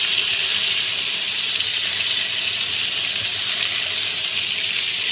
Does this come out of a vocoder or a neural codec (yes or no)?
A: no